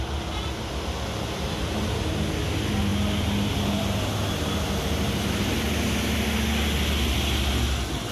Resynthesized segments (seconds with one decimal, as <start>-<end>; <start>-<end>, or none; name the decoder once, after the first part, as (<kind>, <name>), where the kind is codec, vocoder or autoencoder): none